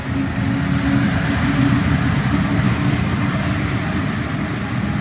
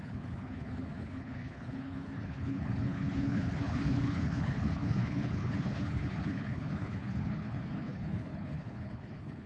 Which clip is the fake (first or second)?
second